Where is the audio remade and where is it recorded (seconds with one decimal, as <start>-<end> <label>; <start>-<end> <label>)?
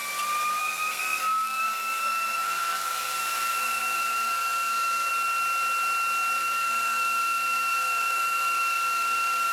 0.0-0.6 recorded; 0.6-5.1 remade; 5.1-6.4 recorded; 6.4-9.5 remade